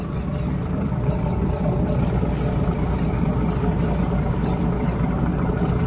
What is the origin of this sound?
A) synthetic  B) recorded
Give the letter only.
B